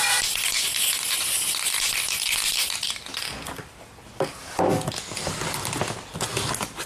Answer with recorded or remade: recorded